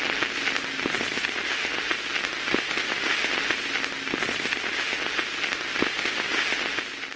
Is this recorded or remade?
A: recorded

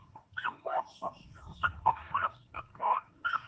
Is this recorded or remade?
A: remade